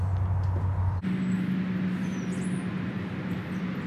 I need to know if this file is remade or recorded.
recorded